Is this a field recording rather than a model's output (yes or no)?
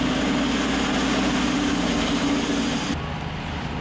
yes